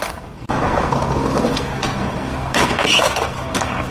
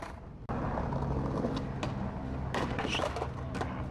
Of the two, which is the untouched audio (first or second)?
second